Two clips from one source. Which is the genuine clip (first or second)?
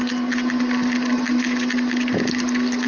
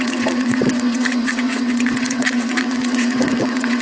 first